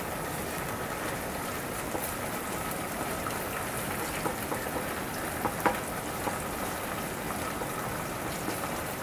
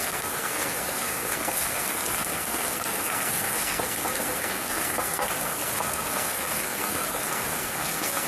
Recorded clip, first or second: first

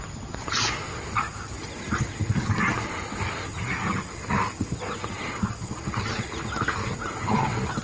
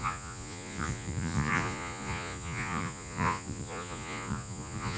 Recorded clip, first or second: first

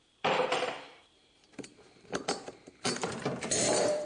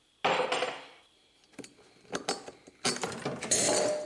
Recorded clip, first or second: second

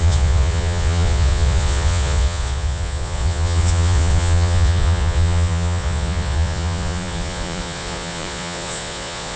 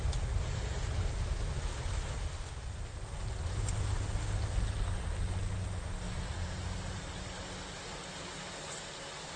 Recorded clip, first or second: second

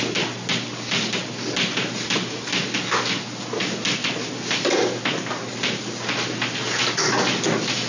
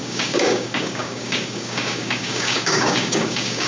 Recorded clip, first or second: first